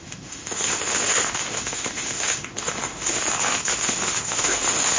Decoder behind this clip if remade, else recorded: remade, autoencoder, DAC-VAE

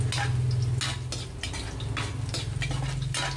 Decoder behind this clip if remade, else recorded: recorded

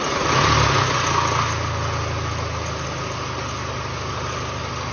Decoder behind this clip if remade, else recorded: recorded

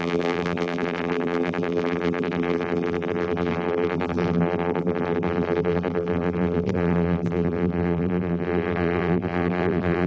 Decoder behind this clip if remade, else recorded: remade, vocoder, BigVGAN v2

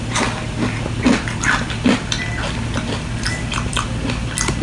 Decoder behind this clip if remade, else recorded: recorded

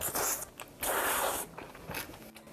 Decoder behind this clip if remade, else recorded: recorded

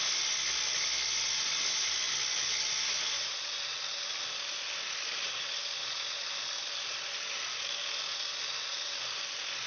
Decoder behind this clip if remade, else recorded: recorded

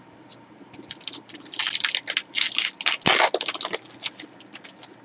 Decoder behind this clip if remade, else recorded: recorded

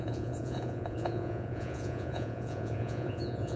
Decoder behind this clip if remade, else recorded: remade, vocoder, Vocos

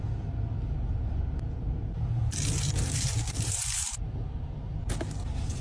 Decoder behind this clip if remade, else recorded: recorded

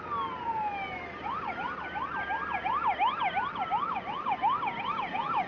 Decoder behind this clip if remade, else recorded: recorded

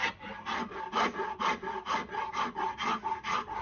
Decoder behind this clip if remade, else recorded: recorded